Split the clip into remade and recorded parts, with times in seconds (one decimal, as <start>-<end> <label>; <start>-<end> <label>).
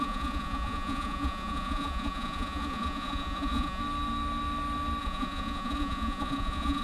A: 0.0-3.8 remade; 3.8-5.0 recorded; 5.0-6.8 remade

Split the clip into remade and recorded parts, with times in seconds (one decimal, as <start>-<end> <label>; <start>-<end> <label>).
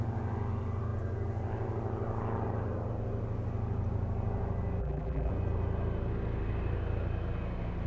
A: 0.0-4.8 recorded; 4.8-5.3 remade; 5.3-7.9 recorded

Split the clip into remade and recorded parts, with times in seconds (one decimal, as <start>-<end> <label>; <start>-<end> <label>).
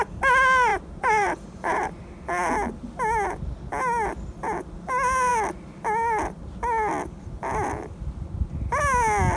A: 0.0-0.7 recorded; 0.7-1.8 remade; 1.8-9.4 recorded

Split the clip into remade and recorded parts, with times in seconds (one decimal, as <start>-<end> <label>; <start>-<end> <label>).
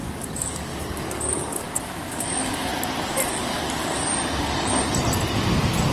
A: 0.0-2.7 remade; 2.7-3.3 recorded; 3.3-4.1 remade; 4.1-5.9 recorded